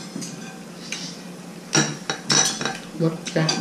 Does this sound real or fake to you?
real